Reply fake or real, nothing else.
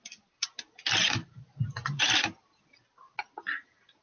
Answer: real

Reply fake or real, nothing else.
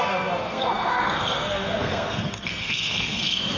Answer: fake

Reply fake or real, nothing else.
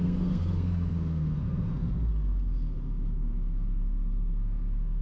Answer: fake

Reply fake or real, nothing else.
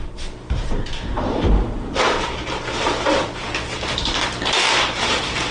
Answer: fake